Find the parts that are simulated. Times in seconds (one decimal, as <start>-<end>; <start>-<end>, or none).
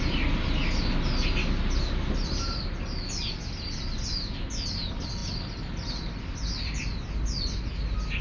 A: none